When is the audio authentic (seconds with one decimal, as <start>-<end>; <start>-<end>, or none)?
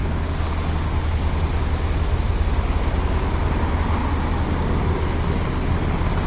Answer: 0.0-4.0; 5.0-6.3